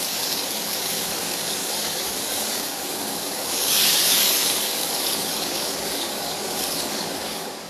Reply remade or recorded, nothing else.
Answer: remade